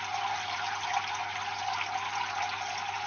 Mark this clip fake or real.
real